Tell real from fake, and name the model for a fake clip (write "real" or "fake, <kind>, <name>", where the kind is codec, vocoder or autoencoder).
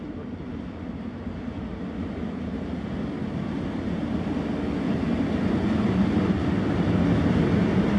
real